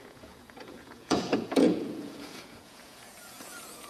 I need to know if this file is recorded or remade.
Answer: remade